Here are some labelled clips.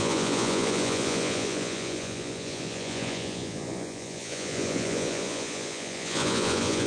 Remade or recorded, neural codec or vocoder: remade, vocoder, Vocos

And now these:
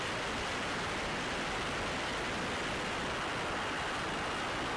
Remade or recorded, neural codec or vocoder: recorded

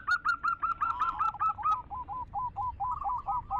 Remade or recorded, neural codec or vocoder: recorded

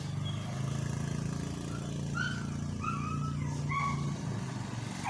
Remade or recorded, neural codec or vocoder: recorded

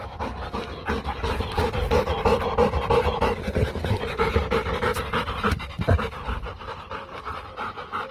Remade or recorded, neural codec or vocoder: recorded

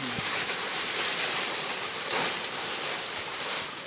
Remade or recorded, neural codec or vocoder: remade, vocoder, BigVGAN v2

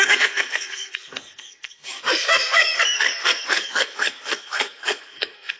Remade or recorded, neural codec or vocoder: remade, codec, SNAC